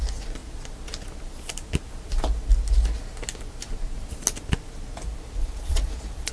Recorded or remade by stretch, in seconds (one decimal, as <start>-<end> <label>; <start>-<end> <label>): 0.0-5.4 recorded; 5.4-6.3 remade